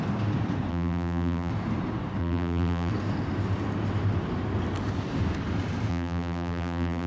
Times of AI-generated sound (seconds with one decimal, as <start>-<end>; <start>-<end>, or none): 0.7-1.5; 2.2-2.9; 5.9-7.1